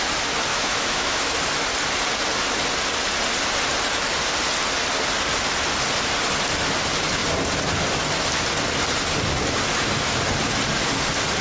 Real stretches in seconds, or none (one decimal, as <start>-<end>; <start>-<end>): 0.0-0.5; 1.3-11.4